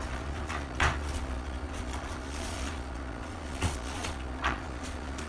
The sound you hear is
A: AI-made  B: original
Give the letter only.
A